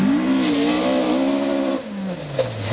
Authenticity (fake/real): real